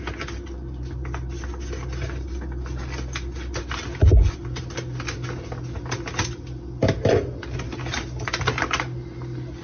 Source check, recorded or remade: recorded